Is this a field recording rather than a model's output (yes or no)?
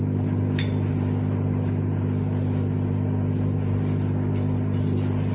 yes